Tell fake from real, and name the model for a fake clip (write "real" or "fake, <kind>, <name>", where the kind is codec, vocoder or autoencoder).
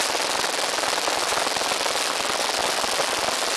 real